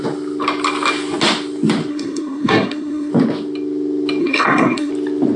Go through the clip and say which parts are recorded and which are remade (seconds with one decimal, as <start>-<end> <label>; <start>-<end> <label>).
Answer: 0.0-1.9 recorded; 1.9-3.1 remade; 3.1-4.2 recorded; 4.2-4.9 remade; 4.9-5.4 recorded